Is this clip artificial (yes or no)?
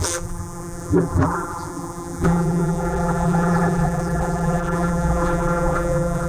yes